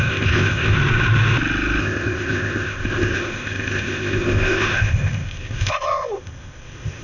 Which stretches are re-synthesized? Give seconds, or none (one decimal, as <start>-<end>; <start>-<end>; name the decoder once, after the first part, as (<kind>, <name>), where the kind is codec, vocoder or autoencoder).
0.0-0.8 (codec, ZipCodec); 1.8-7.0